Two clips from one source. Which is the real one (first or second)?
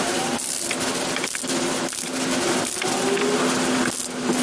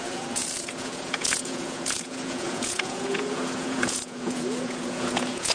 first